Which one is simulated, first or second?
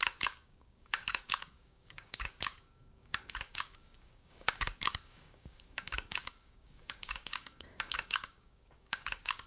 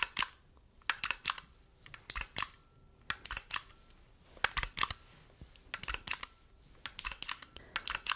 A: first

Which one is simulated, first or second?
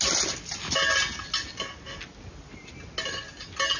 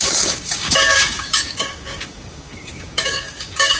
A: second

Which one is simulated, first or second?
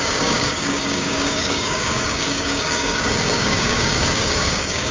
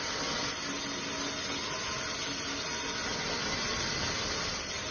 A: first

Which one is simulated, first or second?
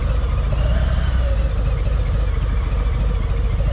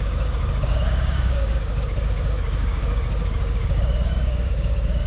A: second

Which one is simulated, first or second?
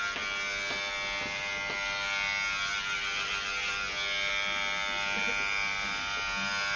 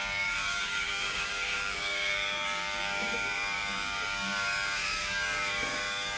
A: second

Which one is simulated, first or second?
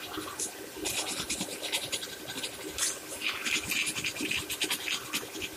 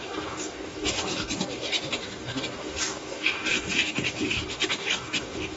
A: second